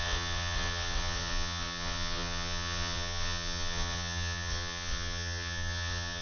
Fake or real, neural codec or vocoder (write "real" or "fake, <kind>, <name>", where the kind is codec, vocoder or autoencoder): fake, vocoder, WaveNeXt